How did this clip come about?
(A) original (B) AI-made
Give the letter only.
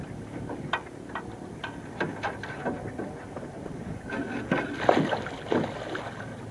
A